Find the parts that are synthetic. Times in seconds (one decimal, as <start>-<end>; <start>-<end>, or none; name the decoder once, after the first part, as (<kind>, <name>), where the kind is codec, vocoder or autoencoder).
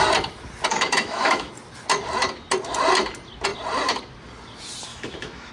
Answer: 0.7-1.5 (autoencoder, DAC-VAE); 4.9-5.5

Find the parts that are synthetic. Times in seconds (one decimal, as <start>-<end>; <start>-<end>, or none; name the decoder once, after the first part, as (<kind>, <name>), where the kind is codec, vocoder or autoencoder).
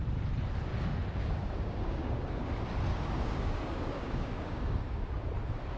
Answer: 0.7-2.5 (codec, DAC); 2.9-5.2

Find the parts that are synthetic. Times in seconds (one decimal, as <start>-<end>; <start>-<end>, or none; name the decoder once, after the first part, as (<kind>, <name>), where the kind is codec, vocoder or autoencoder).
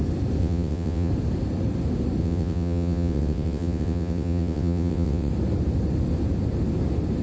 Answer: 0.4-1.1 (vocoder, WaveNeXt); 2.2-5.3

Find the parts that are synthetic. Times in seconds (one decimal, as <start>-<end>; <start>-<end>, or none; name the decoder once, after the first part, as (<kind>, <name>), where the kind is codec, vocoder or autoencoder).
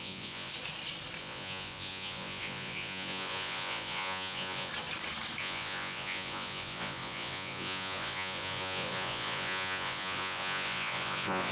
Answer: 0.0-0.5 (vocoder, Vocos); 1.2-4.7; 5.4-11.5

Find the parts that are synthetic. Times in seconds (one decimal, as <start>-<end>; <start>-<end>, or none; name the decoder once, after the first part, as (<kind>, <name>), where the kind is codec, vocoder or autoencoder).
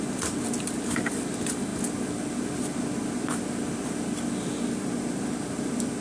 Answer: none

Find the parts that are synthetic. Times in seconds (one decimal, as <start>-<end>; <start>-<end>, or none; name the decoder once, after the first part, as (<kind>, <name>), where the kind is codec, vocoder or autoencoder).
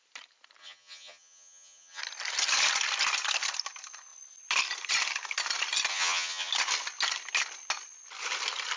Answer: 0.6-2.0 (vocoder, HiFi-GAN); 5.9-6.5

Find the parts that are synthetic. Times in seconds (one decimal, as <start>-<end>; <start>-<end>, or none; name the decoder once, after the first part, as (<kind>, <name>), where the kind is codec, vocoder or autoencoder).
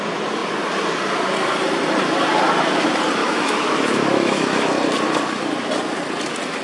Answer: 3.2-4.7 (autoencoder, DAC-VAE)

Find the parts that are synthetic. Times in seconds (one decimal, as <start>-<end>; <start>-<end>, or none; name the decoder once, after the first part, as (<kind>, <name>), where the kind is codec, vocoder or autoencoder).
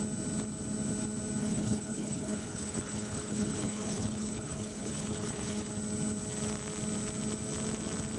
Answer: 1.4-5.7 (codec, HILCodec)